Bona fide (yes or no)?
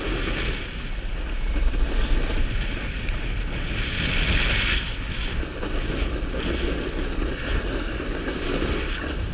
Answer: yes